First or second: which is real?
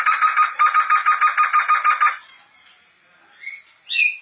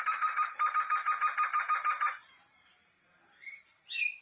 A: first